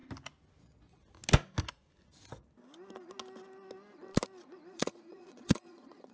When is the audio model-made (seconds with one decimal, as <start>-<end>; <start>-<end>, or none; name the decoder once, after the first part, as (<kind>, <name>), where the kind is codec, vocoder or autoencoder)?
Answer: 0.6-1.0 (vocoder, Vocos); 4.7-6.1